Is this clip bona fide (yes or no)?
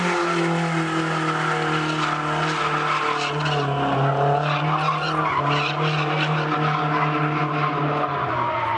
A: yes